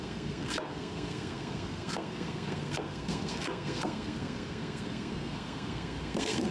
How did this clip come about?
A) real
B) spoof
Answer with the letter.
B